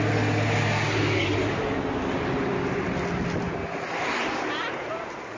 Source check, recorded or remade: recorded